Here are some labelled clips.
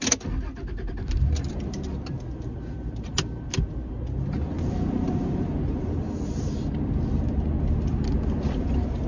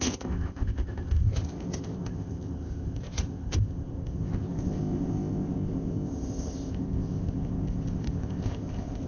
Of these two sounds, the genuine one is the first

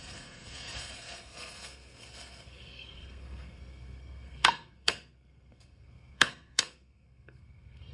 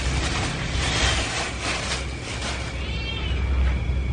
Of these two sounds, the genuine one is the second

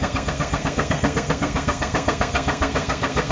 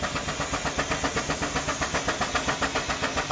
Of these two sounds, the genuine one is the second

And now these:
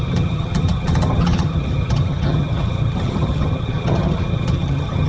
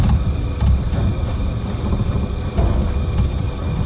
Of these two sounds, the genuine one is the second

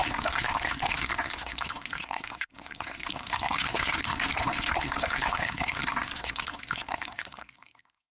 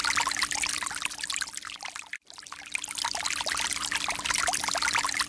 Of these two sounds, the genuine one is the second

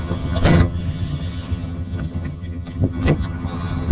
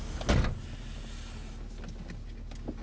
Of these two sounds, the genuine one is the second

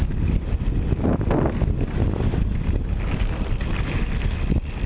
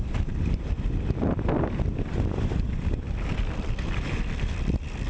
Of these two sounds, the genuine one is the first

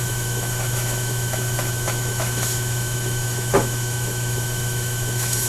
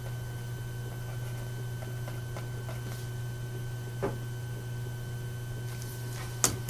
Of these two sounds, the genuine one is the second